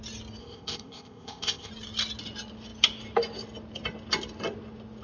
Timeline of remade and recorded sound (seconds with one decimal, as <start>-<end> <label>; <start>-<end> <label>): 0.0-0.4 recorded; 0.4-1.7 remade; 1.7-5.0 recorded